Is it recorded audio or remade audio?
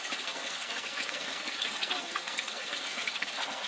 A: remade